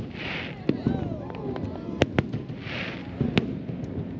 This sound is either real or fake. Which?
real